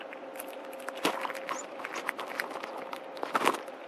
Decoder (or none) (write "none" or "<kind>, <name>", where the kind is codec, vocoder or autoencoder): none